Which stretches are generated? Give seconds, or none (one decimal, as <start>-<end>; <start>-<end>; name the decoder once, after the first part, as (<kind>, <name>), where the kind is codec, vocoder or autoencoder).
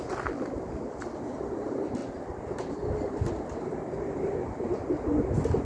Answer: none